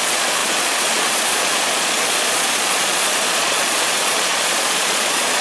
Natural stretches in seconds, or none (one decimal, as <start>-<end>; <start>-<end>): none